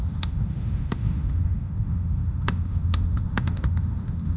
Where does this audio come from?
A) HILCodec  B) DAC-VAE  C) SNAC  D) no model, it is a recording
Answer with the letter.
B